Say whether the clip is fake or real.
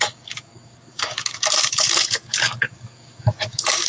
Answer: fake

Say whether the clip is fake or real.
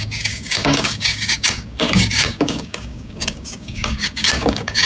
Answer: fake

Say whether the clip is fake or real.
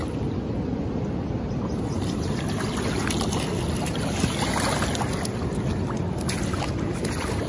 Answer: real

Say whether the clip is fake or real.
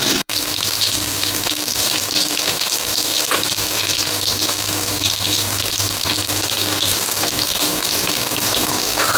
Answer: fake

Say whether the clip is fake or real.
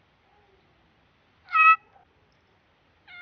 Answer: real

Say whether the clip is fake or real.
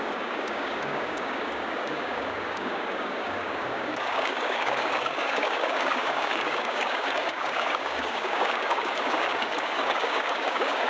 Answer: fake